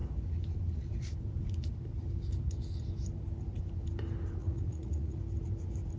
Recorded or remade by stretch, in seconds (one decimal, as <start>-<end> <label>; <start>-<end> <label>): 0.0-4.4 recorded; 4.4-5.2 remade; 5.2-6.0 recorded